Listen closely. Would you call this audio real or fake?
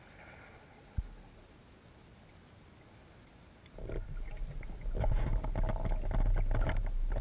real